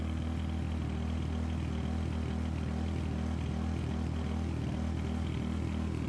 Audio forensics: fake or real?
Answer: real